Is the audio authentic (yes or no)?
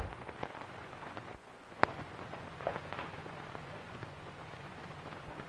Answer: no